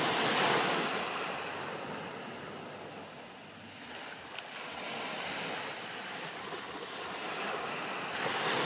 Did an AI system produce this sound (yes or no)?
no